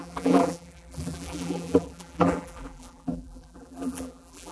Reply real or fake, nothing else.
fake